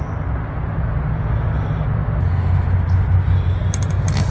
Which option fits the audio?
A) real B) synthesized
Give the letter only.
A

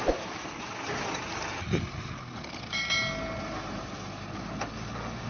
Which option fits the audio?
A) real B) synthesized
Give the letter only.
A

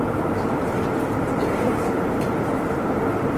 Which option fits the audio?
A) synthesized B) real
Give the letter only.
A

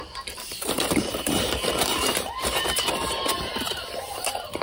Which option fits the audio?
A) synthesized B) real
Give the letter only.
A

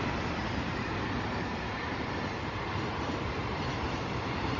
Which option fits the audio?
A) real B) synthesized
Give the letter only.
B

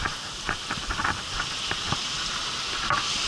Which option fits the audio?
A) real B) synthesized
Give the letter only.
A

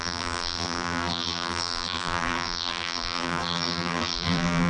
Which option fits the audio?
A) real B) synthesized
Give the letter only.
B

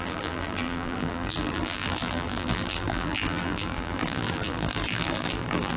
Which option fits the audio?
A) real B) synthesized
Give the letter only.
B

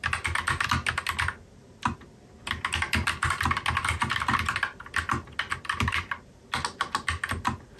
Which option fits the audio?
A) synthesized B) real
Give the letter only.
B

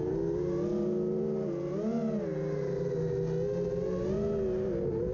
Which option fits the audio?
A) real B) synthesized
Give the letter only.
A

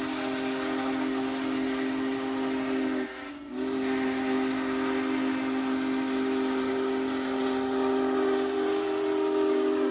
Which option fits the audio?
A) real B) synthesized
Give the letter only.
A